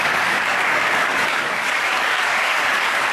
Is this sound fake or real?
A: fake